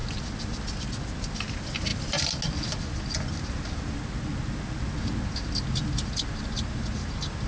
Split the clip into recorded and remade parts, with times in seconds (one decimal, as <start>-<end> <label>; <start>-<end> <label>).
0.0-7.5 recorded

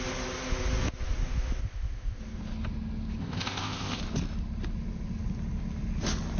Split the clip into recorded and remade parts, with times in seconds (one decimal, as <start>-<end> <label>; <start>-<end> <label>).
0.0-1.6 recorded; 1.6-2.2 remade; 2.2-3.2 recorded; 3.2-4.0 remade; 4.0-6.4 recorded

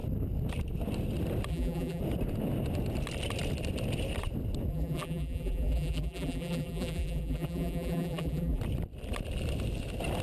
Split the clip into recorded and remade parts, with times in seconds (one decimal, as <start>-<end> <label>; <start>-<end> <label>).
0.0-1.5 recorded; 1.5-2.0 remade; 2.0-4.7 recorded; 4.7-8.6 remade; 8.6-10.2 recorded

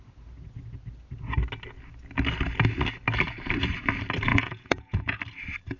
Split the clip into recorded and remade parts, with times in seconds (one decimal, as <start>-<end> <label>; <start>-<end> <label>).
0.0-4.3 recorded; 4.3-5.2 remade; 5.2-5.8 recorded

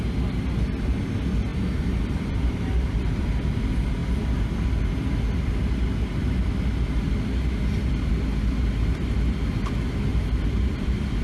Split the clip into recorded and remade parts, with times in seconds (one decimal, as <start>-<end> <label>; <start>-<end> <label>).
0.0-1.5 recorded; 1.5-3.6 remade; 3.6-10.1 recorded; 10.1-11.2 remade

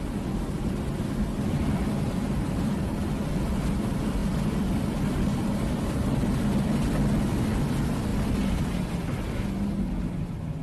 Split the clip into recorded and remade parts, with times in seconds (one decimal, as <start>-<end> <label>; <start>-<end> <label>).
0.0-4.2 recorded; 4.2-7.6 remade; 7.6-8.1 recorded; 8.1-8.9 remade; 8.9-10.6 recorded